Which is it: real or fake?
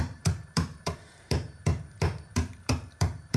fake